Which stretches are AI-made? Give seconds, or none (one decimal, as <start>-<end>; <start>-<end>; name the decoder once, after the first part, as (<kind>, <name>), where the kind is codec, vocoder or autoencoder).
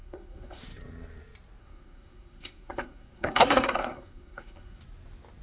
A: 0.0-0.6 (codec, SNAC); 1.6-4.8